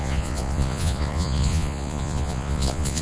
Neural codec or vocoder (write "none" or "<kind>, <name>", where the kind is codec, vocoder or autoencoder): vocoder, Vocos